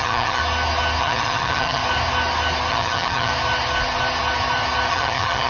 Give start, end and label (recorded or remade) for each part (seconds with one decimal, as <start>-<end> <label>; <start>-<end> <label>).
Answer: 0.0-0.4 remade; 0.4-1.0 recorded; 1.0-1.8 remade; 1.8-2.7 recorded; 2.7-3.3 remade; 3.3-4.9 recorded; 4.9-5.5 remade